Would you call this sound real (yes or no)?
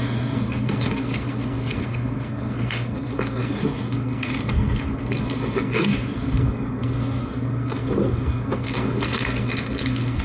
no